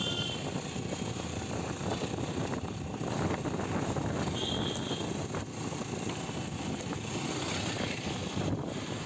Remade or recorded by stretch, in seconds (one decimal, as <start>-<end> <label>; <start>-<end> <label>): 0.0-9.1 recorded